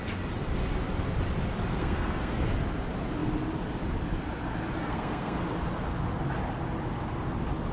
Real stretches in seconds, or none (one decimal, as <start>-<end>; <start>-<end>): 0.0-1.7; 2.4-4.8; 5.4-7.7